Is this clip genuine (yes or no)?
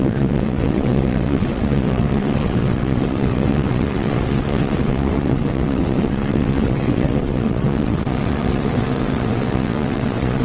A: no